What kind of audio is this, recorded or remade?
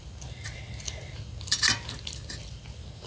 recorded